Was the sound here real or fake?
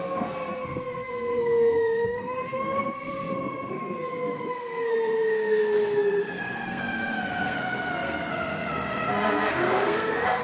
fake